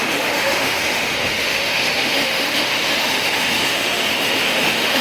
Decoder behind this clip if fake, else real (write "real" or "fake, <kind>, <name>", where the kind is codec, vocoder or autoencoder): fake, autoencoder, DAC-VAE